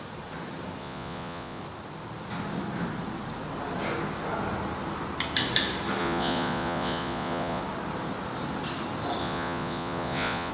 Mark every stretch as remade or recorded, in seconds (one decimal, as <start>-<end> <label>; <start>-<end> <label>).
0.0-0.8 recorded; 0.8-1.6 remade; 1.6-6.0 recorded; 6.0-7.6 remade; 7.6-9.2 recorded; 9.2-10.5 remade

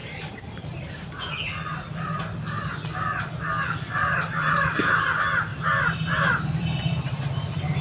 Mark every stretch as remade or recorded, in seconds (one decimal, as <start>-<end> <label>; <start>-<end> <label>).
0.0-1.2 remade; 1.2-4.0 recorded; 4.0-4.8 remade; 4.8-5.5 recorded; 5.5-7.3 remade; 7.3-7.8 recorded

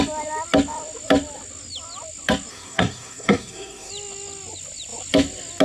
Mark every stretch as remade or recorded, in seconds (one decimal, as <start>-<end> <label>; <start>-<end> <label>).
0.0-2.5 recorded; 2.5-3.9 remade; 3.9-5.6 recorded

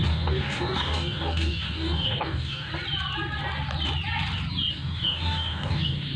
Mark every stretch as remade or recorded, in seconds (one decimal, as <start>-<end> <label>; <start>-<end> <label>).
0.0-2.7 remade; 2.7-4.7 recorded; 4.7-6.2 remade